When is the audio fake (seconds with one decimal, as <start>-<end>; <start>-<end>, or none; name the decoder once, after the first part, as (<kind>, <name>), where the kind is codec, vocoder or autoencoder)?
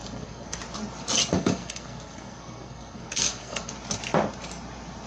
0.0-0.6 (codec, SNAC); 1.3-3.7